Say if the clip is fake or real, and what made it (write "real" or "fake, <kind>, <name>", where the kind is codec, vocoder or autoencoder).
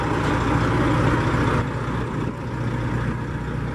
real